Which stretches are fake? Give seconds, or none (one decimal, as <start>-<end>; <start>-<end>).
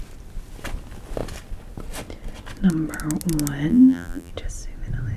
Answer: 3.7-4.3